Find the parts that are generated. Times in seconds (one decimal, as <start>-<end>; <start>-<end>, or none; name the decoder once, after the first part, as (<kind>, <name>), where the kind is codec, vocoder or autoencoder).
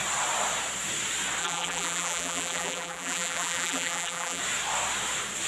1.4-4.4 (vocoder, BigVGAN v2)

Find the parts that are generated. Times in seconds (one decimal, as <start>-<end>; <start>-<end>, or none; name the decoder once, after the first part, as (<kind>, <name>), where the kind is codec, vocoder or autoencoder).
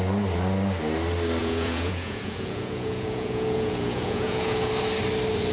1.4-4.7 (vocoder, Vocos)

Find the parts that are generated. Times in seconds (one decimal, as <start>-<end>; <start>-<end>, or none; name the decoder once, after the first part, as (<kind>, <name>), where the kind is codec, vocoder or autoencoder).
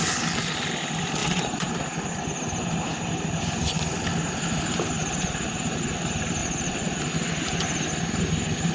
1.2-1.7 (vocoder, Vocos); 5.0-5.6; 6.4-7.0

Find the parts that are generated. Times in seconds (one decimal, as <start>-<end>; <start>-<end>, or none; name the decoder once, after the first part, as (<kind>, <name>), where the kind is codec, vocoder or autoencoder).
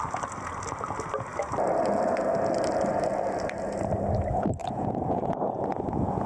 4.6-6.3 (vocoder, Vocos)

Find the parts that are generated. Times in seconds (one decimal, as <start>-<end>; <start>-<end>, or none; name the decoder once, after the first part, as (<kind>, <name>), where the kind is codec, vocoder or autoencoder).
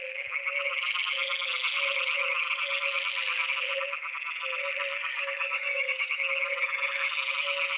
4.9-6.1 (codec, DAC)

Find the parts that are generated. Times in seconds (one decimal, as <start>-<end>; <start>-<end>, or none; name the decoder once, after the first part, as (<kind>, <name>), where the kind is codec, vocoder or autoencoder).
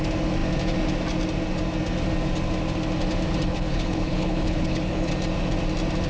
3.5-5.1 (codec, HILCodec)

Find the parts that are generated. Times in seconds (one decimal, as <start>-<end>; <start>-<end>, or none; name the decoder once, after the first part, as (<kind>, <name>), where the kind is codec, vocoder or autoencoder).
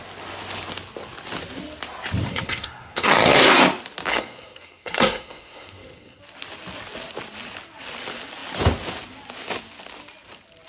2.3-3.5 (codec, SNAC); 4.1-6.2